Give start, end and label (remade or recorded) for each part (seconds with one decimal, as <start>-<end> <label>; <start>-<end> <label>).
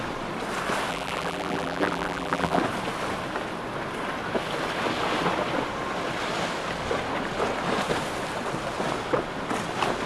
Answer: 0.0-0.9 recorded; 0.9-2.6 remade; 2.6-10.1 recorded